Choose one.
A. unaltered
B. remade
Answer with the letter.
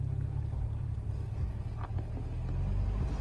A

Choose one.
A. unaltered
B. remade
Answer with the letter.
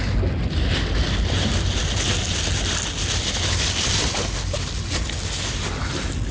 A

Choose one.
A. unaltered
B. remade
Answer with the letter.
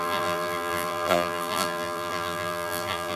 B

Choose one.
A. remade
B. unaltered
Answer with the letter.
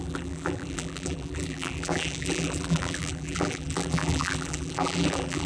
A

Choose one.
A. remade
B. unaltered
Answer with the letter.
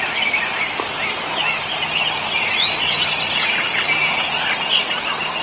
A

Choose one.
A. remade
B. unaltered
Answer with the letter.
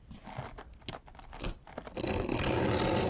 B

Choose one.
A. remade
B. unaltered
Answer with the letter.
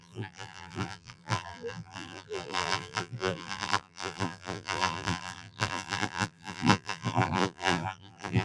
A